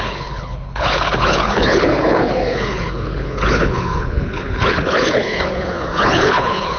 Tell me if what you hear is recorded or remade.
remade